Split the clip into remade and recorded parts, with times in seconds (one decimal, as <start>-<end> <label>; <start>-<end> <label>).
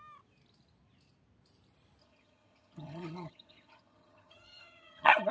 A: 0.0-2.0 recorded; 2.0-5.3 remade